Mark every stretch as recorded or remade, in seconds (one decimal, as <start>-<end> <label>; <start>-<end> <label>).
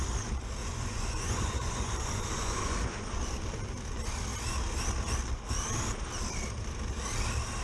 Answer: 0.0-0.6 recorded; 0.6-3.2 remade; 3.2-7.6 recorded